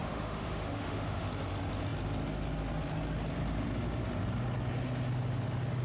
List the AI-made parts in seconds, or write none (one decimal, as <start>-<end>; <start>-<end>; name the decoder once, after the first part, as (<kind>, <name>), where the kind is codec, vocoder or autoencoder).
0.0-1.3 (autoencoder, DAC-VAE)